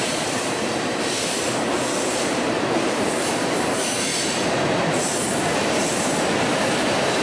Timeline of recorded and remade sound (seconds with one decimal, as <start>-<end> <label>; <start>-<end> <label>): 0.0-4.1 remade; 4.1-5.0 recorded; 5.0-7.2 remade